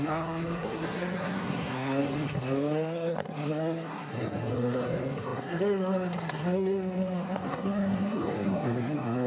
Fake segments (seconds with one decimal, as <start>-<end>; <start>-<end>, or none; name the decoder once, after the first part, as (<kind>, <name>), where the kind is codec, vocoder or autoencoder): 0.0-9.3 (codec, SNAC)